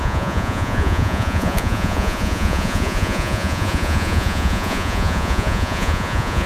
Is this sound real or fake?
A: fake